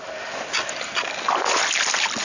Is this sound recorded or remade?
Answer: recorded